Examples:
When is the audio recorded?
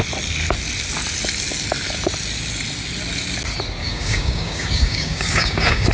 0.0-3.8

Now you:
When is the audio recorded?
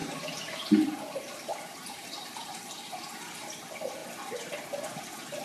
3.2-5.4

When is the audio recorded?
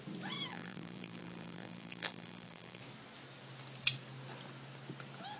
0.0-0.5; 2.8-5.4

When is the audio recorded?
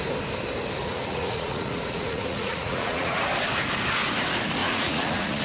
0.0-0.8; 3.3-4.6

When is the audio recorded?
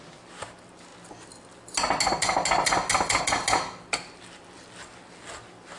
0.0-5.8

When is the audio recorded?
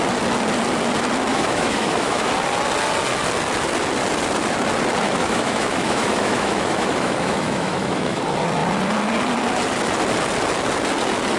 0.0-1.3; 2.3-5.2; 8.2-11.4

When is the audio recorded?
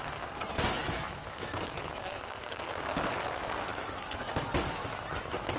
0.0-0.8; 2.8-3.7; 4.3-5.6